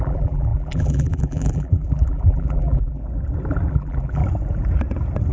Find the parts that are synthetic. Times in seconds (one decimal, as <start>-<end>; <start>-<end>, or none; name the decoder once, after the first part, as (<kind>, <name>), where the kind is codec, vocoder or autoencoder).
0.0-3.0 (vocoder, BigVGAN v2); 3.7-4.2